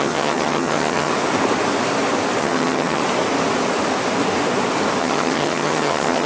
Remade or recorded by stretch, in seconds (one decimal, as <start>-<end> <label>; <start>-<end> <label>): 0.0-1.1 remade; 1.1-2.4 recorded; 2.4-3.0 remade; 3.0-5.0 recorded; 5.0-6.3 remade